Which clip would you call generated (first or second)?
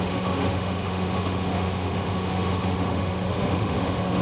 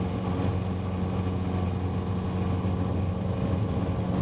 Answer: first